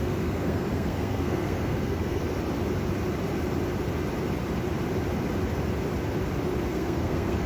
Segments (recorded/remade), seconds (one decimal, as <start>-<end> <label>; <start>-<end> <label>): 0.0-2.2 remade; 2.2-6.7 recorded; 6.7-7.5 remade